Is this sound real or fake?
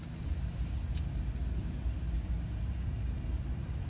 real